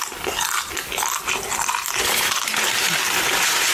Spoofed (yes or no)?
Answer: no